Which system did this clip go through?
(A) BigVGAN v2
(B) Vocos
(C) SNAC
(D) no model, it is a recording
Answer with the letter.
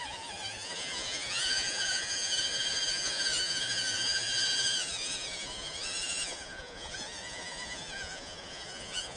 B